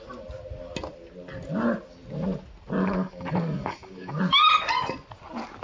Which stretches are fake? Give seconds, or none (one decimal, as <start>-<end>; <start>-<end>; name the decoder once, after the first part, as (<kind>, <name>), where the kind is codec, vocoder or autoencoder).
2.8-4.2 (codec, DAC)

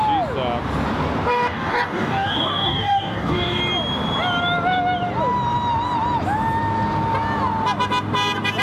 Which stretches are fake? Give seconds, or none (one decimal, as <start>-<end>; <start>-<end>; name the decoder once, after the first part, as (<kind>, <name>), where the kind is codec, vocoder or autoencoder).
1.3-3.6 (codec, DAC)

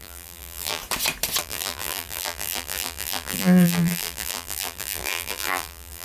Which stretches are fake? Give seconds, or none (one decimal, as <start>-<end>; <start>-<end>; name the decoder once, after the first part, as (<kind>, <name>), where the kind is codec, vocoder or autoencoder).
0.0-0.8 (vocoder, BigVGAN v2); 1.4-6.0

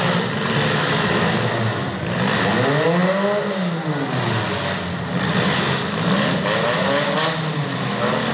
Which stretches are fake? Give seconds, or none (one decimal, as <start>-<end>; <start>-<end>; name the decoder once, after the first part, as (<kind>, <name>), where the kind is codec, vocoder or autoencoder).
none

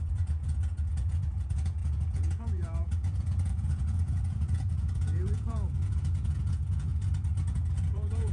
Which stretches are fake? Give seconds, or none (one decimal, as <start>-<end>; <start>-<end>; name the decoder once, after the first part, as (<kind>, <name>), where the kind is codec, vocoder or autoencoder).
0.0-6.9 (vocoder, Vocos); 7.5-8.3

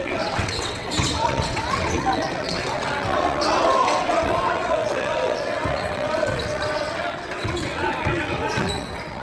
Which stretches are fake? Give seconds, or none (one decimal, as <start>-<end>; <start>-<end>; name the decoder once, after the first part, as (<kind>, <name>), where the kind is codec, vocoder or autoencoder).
0.0-9.2 (vocoder, WaveNeXt)